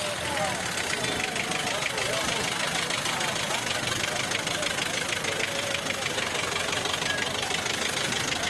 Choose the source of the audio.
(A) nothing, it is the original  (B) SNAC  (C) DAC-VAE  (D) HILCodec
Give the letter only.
A